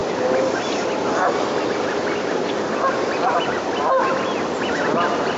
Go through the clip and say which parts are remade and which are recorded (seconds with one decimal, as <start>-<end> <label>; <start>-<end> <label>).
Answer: 0.0-5.4 recorded